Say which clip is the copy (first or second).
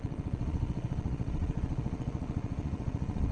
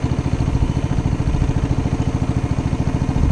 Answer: first